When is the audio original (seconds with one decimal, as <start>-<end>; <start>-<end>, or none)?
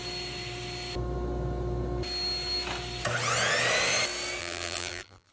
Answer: 0.0-4.4